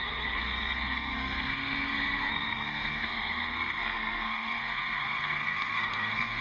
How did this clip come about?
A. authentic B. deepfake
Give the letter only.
B